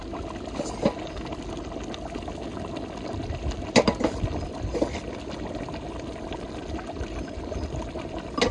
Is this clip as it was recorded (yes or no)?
yes